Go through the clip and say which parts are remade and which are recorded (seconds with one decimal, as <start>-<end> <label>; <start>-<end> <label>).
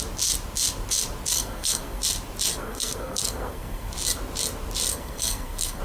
0.0-1.3 recorded; 1.3-2.0 remade; 2.0-2.5 recorded; 2.5-3.9 remade; 3.9-4.9 recorded; 4.9-5.8 remade